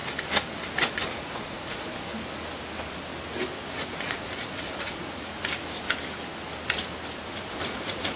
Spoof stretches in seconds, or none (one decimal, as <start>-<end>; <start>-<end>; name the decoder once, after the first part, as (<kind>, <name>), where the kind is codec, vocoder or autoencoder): 0.8-2.1 (vocoder, Vocos); 3.7-5.3; 7.3-8.2